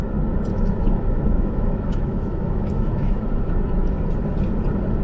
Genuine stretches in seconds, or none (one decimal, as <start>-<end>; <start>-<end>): 0.0-0.5; 3.5-5.0